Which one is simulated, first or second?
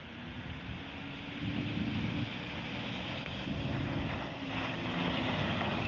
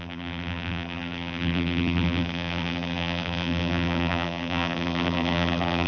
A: second